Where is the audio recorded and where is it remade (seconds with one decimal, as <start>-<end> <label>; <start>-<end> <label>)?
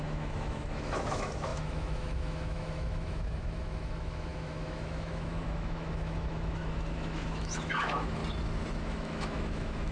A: 0.0-8.2 remade; 8.2-8.8 recorded; 8.8-9.9 remade